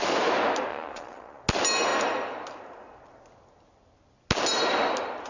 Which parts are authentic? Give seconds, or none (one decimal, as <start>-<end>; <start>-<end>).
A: 0.0-0.7; 1.4-5.3